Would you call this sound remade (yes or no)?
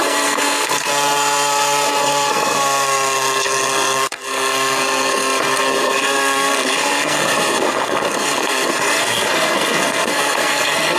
yes